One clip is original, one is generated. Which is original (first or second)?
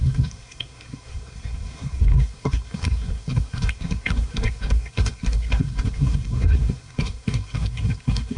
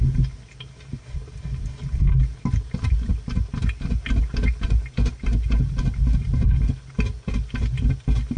second